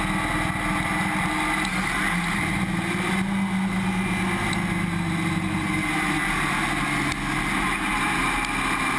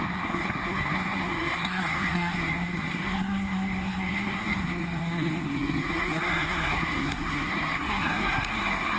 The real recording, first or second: first